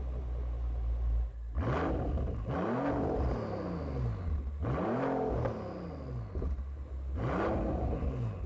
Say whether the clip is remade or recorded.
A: recorded